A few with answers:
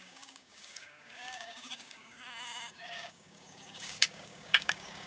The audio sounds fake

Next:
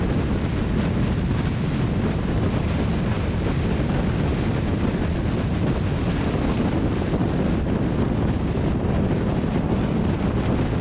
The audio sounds real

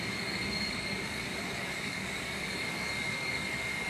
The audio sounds fake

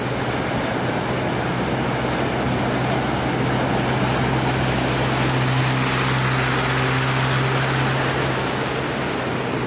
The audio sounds real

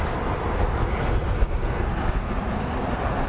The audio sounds real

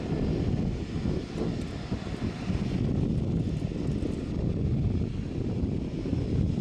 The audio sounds real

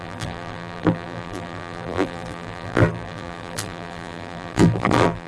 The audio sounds fake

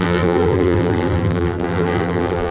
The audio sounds fake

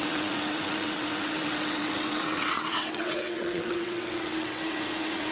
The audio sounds fake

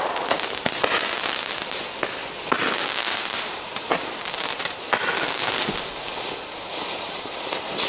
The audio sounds real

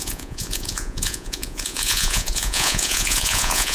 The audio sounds fake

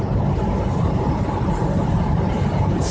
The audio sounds real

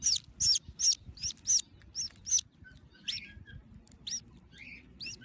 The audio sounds real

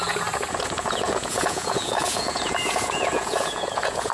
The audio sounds fake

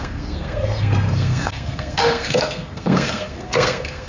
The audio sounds fake